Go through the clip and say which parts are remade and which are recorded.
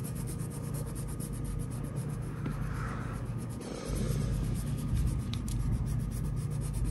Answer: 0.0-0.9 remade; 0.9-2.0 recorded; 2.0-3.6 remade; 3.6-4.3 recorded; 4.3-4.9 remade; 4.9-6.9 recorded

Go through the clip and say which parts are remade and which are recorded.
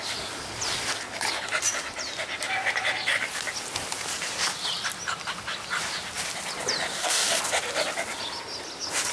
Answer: 0.0-6.9 recorded; 6.9-7.4 remade; 7.4-9.1 recorded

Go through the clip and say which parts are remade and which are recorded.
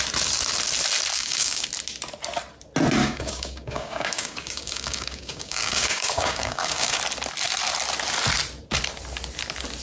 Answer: 0.0-1.1 recorded; 1.1-1.7 remade; 1.7-3.0 recorded; 3.0-7.0 remade; 7.0-9.8 recorded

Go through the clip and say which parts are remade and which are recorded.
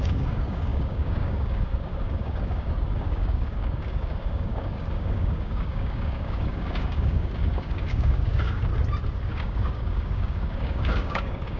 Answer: 0.0-8.7 remade; 8.7-9.3 recorded; 9.3-11.6 remade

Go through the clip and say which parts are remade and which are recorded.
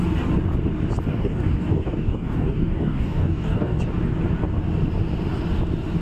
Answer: 0.0-1.1 recorded; 1.1-3.8 remade; 3.8-6.0 recorded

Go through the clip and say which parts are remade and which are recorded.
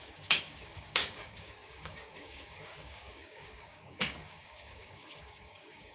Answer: 0.0-5.9 remade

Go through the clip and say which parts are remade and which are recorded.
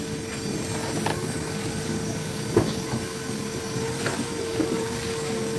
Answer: 0.0-1.1 recorded; 1.1-3.6 remade; 3.6-4.0 recorded; 4.0-5.6 remade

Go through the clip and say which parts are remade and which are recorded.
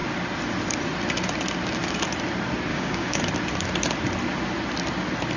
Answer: 0.0-2.7 recorded; 2.7-3.2 remade; 3.2-5.4 recorded